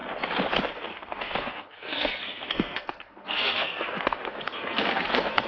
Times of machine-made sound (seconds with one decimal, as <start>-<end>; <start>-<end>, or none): 0.7-5.5